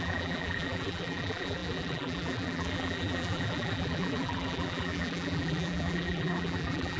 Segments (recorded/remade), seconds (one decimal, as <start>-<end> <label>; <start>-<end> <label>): 0.0-7.0 remade